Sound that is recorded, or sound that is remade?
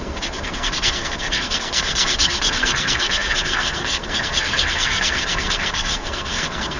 remade